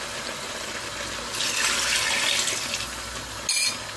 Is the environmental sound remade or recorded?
recorded